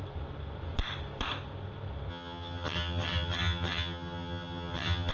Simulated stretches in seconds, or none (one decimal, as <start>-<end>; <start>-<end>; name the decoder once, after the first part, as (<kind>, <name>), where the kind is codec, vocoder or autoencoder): 2.1-5.1 (vocoder, HiFi-GAN)

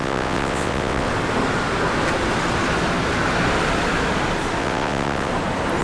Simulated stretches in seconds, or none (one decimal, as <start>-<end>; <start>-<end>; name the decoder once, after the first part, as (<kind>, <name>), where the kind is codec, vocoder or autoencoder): 0.0-1.1 (vocoder, WaveNeXt); 4.6-5.3

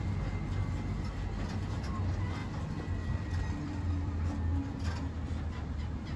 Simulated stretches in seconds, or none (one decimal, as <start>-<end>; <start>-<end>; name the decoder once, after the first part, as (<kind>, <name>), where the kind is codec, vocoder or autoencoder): 2.4-4.6 (vocoder, BigVGAN v2)